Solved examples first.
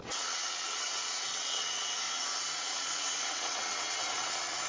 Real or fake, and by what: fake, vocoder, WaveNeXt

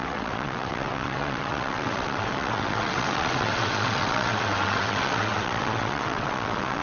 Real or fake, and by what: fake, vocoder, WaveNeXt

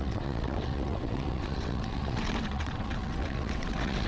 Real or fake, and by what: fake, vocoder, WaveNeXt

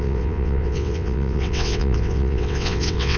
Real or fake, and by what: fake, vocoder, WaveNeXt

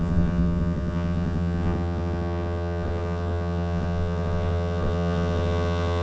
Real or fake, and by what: fake, vocoder, WaveNeXt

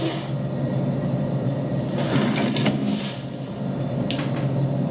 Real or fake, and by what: real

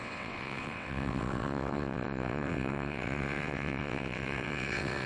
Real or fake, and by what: fake, vocoder, WaveNeXt